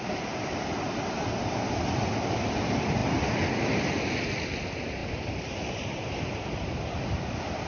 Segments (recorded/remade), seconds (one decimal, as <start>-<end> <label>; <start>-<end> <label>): 0.0-7.7 recorded